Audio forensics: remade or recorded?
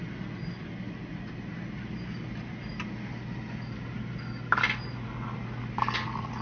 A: recorded